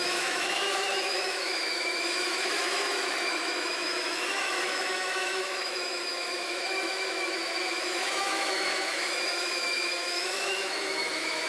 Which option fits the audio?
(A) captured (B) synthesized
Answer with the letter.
B